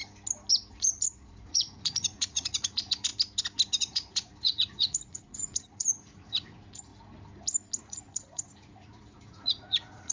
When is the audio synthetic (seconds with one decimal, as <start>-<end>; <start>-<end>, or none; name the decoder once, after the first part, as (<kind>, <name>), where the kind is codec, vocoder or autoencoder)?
0.7-3.1 (vocoder, Vocos); 3.8-6.9; 7.8-10.1